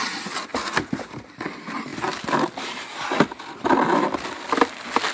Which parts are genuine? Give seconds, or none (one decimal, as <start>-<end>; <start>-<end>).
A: 0.0-5.1